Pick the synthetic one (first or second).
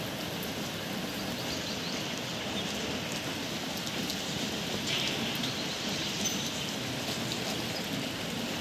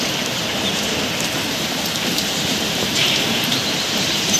second